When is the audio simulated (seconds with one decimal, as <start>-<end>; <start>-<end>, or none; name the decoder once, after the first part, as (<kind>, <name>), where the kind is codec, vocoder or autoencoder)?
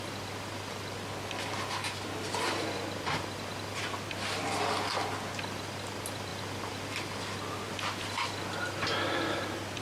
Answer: none